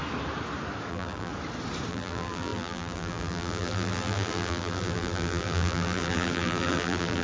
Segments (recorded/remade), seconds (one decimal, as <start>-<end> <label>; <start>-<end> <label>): 0.0-0.9 recorded; 0.9-1.3 remade; 1.3-1.9 recorded; 1.9-7.2 remade